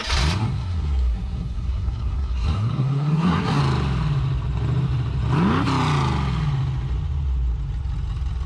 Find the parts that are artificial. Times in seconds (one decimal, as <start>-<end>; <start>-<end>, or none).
0.4-3.6